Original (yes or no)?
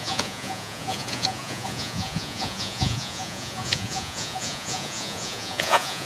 no